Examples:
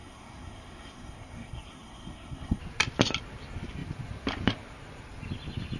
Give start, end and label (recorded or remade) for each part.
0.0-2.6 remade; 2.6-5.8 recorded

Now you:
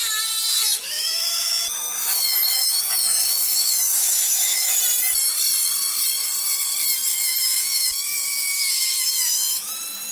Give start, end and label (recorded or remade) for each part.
0.0-0.5 recorded; 0.5-4.8 remade; 4.8-7.1 recorded; 7.1-9.7 remade; 9.7-10.1 recorded